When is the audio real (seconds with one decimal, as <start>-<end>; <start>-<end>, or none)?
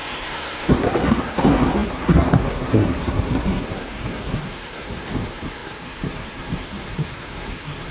none